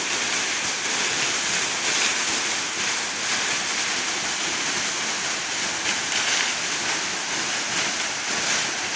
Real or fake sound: real